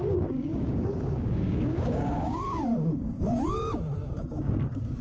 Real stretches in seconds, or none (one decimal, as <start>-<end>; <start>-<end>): none

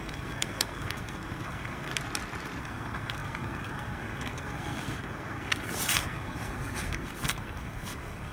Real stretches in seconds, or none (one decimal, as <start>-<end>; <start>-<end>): 1.9-2.6